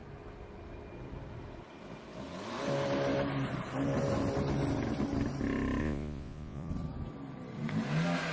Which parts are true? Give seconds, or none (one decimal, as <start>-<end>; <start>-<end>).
0.0-5.8; 6.7-8.3